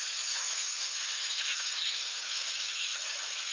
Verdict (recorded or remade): remade